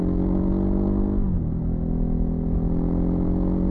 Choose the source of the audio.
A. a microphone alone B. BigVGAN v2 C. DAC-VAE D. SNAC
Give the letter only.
A